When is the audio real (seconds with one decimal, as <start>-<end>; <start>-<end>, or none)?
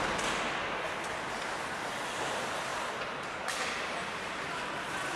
0.0-5.2